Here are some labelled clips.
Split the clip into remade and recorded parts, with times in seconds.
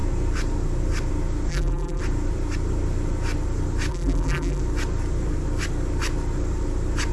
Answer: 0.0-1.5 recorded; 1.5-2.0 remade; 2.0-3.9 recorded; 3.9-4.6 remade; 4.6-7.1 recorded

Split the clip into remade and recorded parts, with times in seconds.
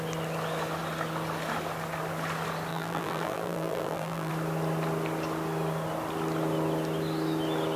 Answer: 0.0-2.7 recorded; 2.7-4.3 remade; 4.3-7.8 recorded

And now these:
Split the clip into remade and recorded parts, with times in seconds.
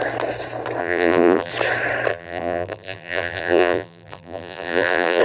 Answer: 0.0-0.8 recorded; 0.8-1.5 remade; 1.5-2.1 recorded; 2.1-5.2 remade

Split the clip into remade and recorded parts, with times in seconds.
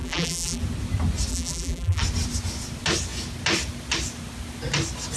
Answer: 0.0-0.6 remade; 0.6-1.3 recorded; 1.3-2.0 remade; 2.0-5.2 recorded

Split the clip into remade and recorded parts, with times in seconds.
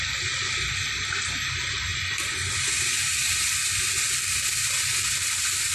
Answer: 0.0-1.9 recorded; 1.9-3.3 remade; 3.3-5.7 recorded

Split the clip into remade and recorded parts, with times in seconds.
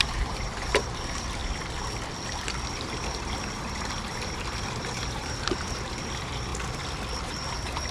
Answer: 0.0-1.4 remade; 1.4-2.7 recorded; 2.7-6.5 remade; 6.5-7.3 recorded; 7.3-7.9 remade